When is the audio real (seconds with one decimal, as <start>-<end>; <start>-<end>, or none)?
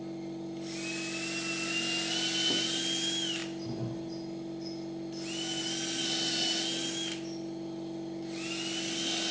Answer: 0.0-9.3